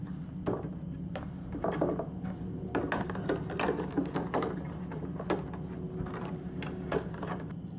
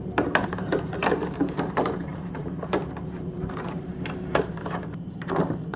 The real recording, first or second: first